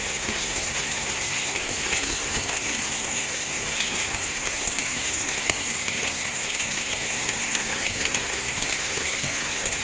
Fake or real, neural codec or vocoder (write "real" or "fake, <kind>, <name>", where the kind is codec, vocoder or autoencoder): fake, codec, SNAC